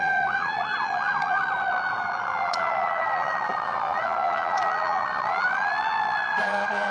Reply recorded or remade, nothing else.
remade